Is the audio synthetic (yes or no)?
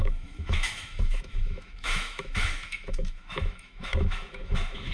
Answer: yes